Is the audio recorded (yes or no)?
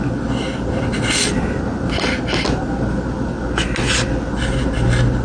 yes